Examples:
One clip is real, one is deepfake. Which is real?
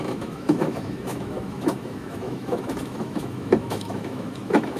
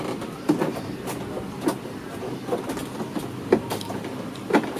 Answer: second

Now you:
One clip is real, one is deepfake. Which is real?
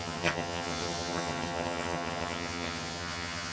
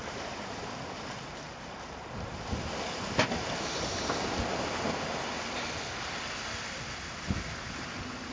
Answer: second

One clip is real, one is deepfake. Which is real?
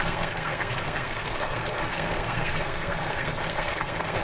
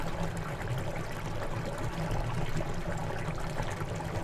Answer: second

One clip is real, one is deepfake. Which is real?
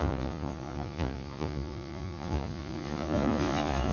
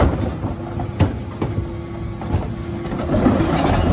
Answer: second